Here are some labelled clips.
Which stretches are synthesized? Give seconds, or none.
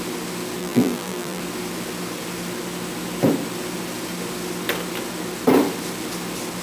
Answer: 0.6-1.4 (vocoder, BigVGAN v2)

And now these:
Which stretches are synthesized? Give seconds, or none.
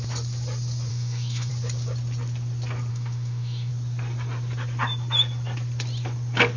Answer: 0.9-1.5 (autoencoder, DAC-VAE); 2.9-3.7